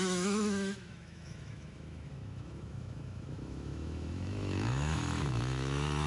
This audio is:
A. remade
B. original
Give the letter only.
A